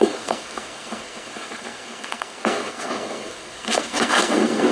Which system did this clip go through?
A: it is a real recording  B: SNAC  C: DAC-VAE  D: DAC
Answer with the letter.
B